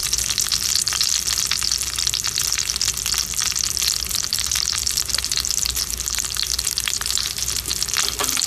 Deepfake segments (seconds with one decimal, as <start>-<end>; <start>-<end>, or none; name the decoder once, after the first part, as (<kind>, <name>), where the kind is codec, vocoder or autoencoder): 4.1-7.7 (vocoder, BigVGAN v2)